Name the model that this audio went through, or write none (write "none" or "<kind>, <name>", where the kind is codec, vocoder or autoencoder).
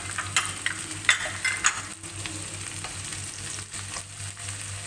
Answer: none